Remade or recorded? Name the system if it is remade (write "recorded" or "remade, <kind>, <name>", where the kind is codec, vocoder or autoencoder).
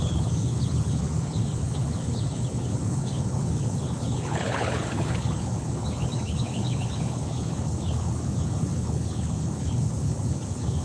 remade, codec, HILCodec